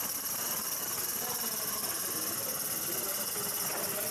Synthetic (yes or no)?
no